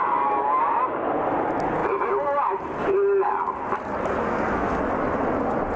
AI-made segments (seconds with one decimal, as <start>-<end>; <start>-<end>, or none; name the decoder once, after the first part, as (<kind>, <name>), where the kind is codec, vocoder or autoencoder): 4.2-4.8 (codec, SNAC)